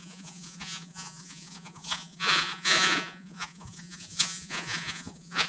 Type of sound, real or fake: fake